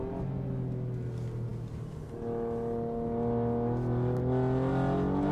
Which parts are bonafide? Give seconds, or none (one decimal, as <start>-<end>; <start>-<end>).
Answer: 0.0-5.3